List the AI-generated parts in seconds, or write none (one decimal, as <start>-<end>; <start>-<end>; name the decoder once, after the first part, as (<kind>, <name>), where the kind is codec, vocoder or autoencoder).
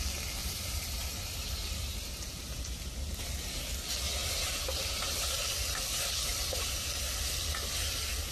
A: 0.4-2.6 (vocoder, BigVGAN v2); 4.2-5.5